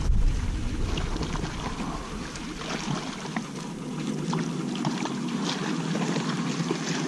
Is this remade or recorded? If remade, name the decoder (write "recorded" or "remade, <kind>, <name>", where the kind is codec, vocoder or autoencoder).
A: recorded